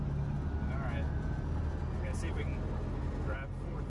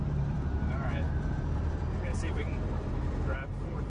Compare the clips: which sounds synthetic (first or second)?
second